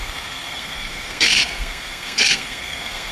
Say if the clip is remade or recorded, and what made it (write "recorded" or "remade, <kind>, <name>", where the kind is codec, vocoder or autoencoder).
remade, codec, SNAC